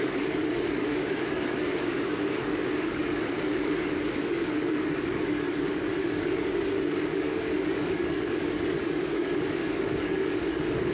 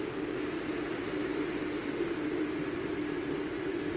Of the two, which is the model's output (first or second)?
first